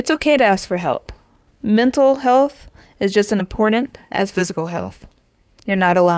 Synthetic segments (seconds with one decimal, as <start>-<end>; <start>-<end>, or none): 0.0-1.3; 3.4-6.2